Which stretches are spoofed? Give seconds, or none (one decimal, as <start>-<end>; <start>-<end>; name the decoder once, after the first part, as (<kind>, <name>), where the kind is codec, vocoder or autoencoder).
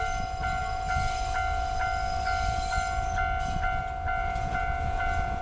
4.2-5.4 (vocoder, Vocos)